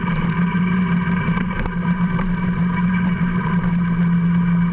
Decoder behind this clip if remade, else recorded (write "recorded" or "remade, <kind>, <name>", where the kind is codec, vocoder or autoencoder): remade, vocoder, BigVGAN v2